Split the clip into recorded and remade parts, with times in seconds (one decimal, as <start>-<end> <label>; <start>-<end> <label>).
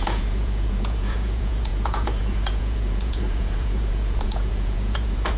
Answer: 0.0-5.4 remade